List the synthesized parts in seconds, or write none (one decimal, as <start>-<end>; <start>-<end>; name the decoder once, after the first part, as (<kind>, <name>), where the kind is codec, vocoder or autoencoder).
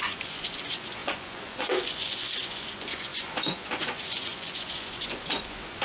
0.0-5.8 (vocoder, Vocos)